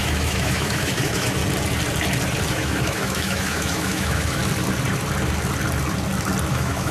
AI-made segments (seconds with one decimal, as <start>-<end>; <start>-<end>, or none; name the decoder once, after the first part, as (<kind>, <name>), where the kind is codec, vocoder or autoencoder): 0.0-1.4 (autoencoder, DAC-VAE); 2.5-4.4; 6.5-6.9